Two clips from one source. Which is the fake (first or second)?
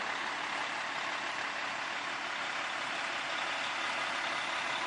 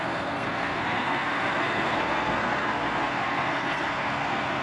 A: second